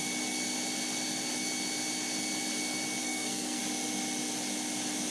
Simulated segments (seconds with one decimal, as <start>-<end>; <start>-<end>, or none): 3.0-3.6